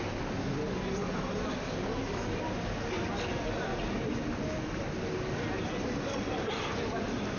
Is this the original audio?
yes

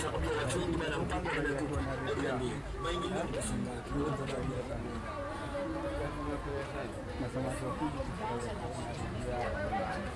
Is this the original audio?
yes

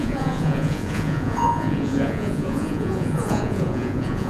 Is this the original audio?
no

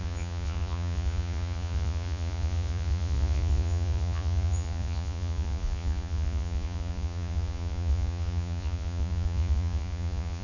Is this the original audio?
no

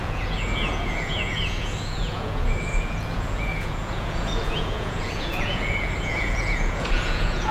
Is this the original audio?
no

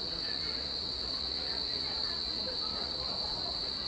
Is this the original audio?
no